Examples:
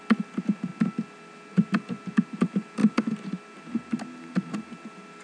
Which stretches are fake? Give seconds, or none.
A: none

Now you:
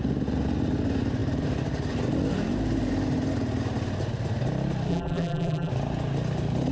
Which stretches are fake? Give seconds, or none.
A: 4.9-5.7 (vocoder, BigVGAN v2)

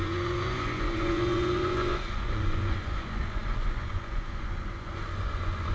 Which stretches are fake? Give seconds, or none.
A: 0.0-5.7 (vocoder, Vocos)

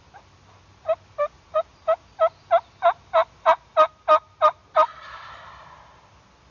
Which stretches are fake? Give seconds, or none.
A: none

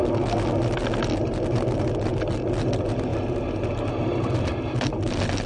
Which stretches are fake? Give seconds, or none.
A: none

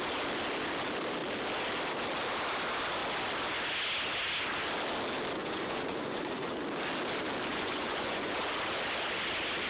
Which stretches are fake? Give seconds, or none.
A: 5.4-6.5 (vocoder, Vocos); 7.5-8.4

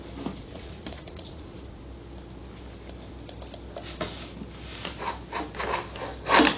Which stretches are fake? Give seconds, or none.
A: 0.4-1.8 (vocoder, Vocos)